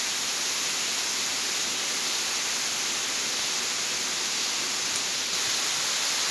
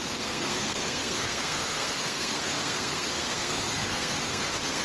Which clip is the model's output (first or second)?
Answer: second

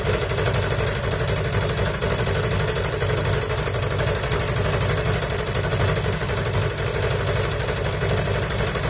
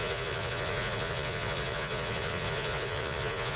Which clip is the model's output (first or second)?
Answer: second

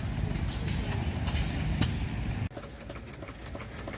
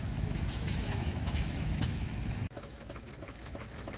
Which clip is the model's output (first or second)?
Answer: second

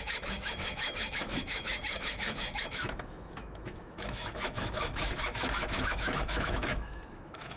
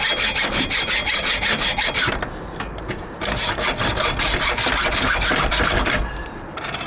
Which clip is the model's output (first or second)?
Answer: first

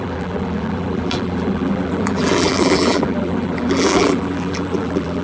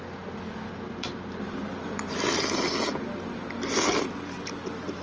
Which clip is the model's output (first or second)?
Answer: first